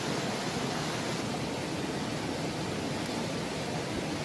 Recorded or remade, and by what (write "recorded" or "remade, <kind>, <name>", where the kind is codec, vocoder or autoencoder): recorded